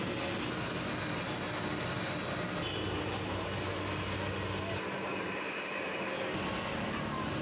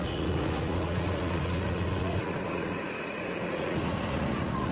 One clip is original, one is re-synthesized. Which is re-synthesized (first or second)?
second